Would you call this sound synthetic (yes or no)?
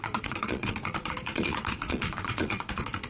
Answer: yes